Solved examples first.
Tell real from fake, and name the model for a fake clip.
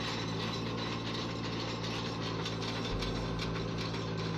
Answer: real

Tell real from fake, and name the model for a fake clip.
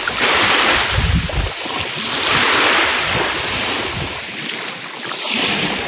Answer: real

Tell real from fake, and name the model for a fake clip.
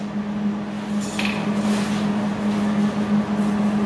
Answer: real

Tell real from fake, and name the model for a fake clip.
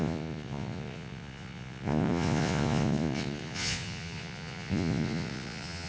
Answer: fake, vocoder, Vocos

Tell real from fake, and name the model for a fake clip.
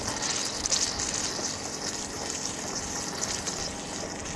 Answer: real